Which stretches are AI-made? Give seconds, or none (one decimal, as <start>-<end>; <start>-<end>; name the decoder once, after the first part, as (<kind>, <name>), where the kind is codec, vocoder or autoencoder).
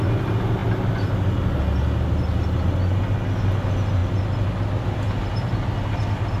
none